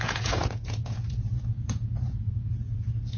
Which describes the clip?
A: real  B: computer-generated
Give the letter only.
B